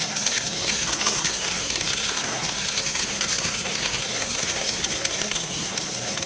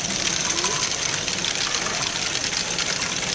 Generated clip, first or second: first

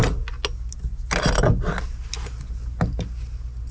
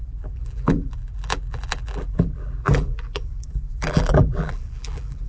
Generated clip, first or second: second